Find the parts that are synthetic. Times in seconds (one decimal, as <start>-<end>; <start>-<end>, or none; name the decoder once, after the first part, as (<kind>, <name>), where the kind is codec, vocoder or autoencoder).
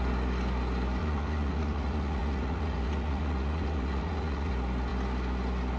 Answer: 1.0-4.5 (vocoder, Vocos)